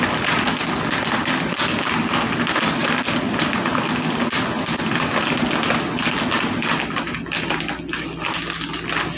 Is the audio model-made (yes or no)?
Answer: no